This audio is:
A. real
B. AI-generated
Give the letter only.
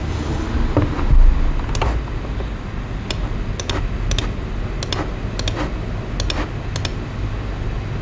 A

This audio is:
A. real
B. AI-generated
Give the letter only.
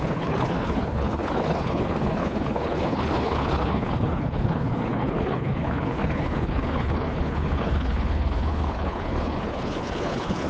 B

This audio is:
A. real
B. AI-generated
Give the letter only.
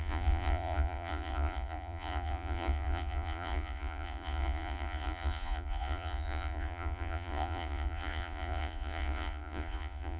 B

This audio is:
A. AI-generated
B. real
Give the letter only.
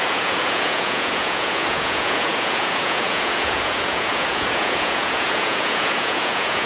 A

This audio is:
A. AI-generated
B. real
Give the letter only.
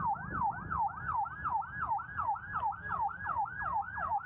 B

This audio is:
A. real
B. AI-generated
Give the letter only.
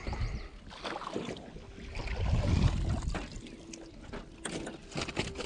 A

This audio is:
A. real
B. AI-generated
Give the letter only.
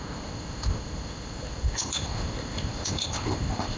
B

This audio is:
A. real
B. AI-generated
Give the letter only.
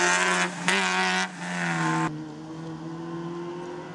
A